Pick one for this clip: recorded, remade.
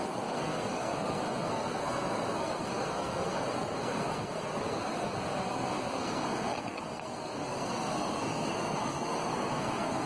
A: remade